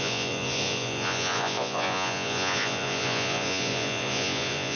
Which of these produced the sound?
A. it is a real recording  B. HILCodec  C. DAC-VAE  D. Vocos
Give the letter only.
D